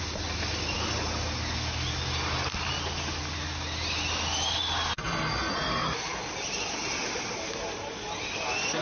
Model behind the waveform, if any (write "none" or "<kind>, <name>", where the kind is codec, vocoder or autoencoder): none